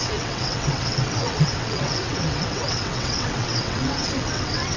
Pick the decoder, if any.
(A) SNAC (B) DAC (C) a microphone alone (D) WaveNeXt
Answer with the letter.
D